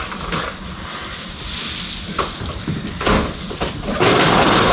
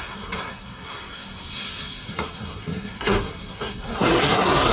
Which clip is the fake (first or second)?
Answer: second